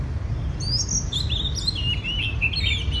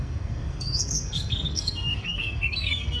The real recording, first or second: first